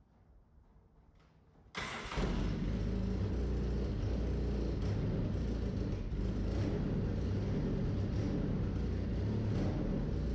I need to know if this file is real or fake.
real